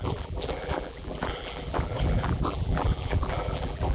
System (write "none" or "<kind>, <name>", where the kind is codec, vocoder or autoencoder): vocoder, BigVGAN v2